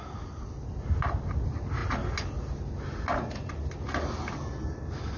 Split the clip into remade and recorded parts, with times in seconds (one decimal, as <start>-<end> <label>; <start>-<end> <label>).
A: 0.0-5.2 recorded